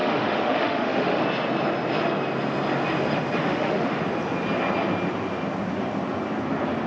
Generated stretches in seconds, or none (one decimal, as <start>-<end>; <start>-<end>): 0.0-1.2; 3.4-4.0